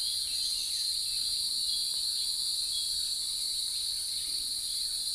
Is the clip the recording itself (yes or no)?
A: yes